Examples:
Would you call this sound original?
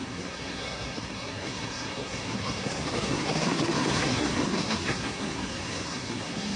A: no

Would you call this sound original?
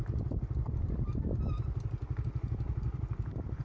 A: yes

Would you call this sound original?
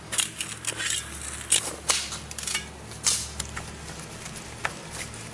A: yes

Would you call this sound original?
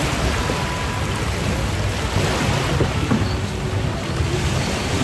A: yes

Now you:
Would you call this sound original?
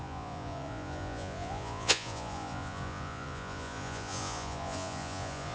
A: no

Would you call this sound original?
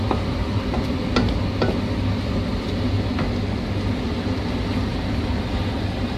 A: yes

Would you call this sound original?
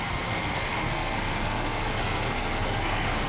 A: no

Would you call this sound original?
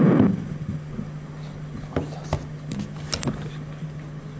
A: yes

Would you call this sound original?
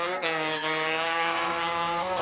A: no